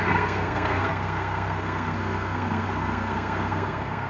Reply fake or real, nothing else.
fake